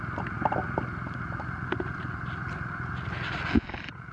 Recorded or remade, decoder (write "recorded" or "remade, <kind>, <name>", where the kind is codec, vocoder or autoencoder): recorded